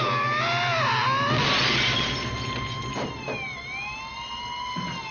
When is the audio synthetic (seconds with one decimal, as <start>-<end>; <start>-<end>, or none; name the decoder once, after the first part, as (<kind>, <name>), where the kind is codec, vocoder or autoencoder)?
2.9-3.4 (vocoder, BigVGAN v2)